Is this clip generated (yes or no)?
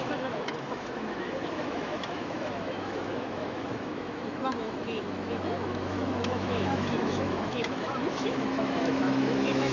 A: yes